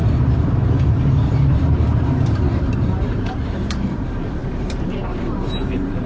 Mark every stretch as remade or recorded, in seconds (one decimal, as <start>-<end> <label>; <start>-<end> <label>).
0.0-6.1 remade